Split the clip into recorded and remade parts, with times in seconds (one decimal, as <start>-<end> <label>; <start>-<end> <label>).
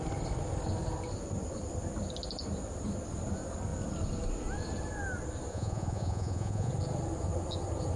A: 0.0-5.5 recorded; 5.5-6.7 remade; 6.7-8.0 recorded